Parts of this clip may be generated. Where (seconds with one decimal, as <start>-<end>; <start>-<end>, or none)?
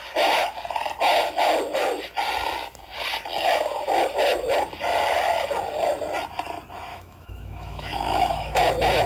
6.9-8.6